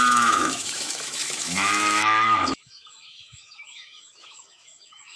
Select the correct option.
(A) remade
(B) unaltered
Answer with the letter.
A